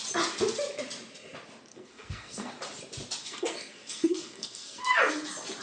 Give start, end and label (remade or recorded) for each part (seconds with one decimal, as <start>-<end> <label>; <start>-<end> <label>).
0.0-1.7 recorded; 1.7-2.5 remade; 2.5-3.2 recorded; 3.2-5.1 remade; 5.1-5.6 recorded